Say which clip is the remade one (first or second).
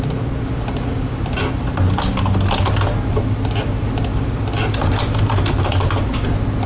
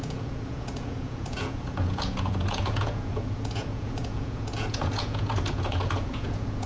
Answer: second